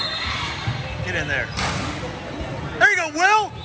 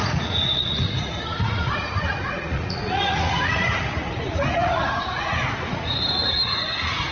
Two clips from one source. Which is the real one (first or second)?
first